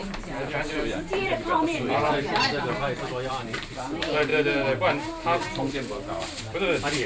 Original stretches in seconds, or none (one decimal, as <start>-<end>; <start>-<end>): 0.0-0.7; 2.3-3.3; 4.3-6.2